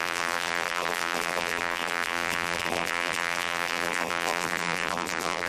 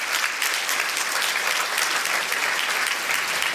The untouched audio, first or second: second